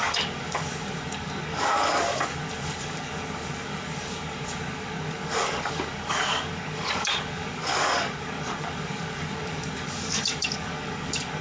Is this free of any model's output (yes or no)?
no